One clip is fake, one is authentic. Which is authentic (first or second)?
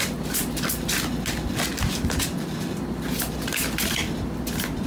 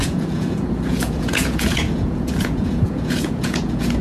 first